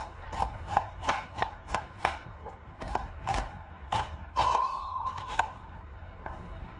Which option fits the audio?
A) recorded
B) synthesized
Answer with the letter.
B